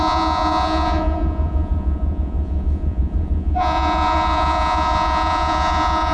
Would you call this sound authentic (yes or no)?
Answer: no